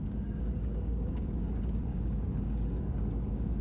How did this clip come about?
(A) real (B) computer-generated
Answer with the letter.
B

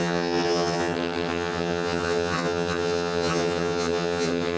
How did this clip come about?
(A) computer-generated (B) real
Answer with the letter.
A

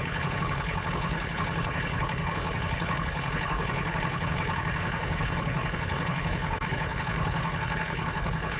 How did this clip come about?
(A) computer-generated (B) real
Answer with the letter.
A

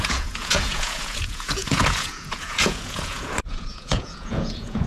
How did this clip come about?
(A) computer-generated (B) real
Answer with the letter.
A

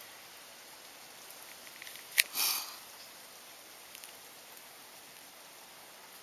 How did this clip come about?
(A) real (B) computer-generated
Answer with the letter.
B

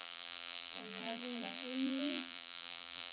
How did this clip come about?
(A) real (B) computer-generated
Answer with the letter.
B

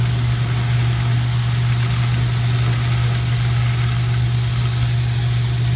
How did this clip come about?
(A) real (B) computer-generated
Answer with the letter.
A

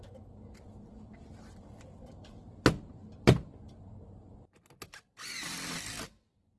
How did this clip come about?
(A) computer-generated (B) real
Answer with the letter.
B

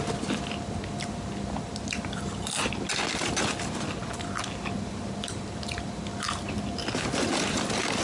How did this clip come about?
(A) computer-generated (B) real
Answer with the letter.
B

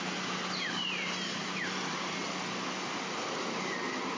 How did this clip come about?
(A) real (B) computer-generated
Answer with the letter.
A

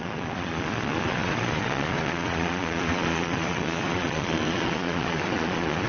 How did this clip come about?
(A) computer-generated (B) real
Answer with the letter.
A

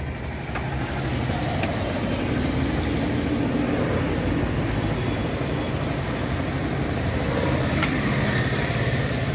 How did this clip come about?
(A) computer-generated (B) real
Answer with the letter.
B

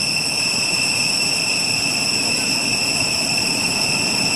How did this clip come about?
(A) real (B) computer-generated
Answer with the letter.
B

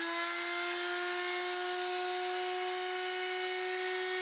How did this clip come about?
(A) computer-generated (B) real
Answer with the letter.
B